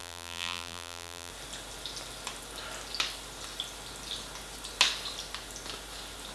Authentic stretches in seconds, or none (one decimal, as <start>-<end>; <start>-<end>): 1.3-6.3